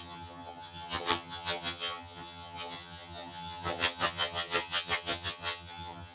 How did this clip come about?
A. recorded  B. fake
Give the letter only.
B